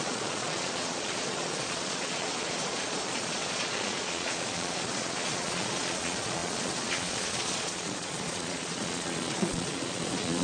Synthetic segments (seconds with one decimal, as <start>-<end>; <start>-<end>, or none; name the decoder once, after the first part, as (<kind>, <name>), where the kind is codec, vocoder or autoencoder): 0.0-10.4 (vocoder, Vocos)